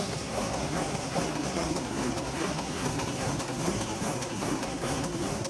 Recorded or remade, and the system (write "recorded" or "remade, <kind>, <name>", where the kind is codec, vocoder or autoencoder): remade, codec, SNAC